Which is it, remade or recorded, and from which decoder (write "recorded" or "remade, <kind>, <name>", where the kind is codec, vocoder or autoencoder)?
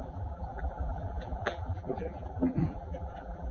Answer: remade, vocoder, BigVGAN v2